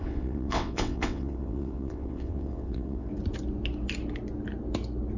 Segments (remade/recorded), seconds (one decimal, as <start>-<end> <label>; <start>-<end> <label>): 0.0-3.1 remade; 3.1-5.2 recorded